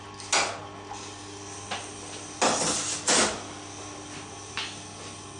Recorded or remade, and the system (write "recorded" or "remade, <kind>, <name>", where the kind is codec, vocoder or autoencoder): recorded